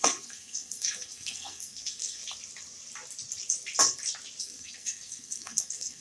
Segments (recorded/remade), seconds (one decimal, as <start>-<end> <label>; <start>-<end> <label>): 0.0-2.2 remade; 2.2-4.4 recorded; 4.4-6.0 remade